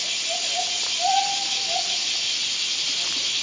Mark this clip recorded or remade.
recorded